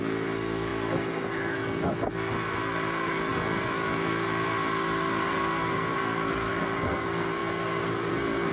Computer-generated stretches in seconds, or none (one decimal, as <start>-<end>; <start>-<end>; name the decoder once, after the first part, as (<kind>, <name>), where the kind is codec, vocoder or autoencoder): 0.0-8.5 (codec, SNAC)